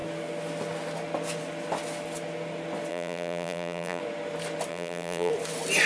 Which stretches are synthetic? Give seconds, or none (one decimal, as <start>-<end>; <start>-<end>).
2.9-4.0; 4.7-5.3